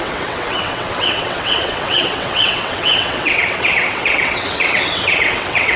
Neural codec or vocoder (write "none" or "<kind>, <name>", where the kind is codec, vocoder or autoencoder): vocoder, WaveNeXt